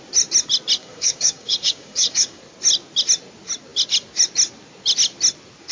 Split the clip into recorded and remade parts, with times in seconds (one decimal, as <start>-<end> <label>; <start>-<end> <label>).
0.0-0.8 recorded; 0.8-2.4 remade; 2.4-5.7 recorded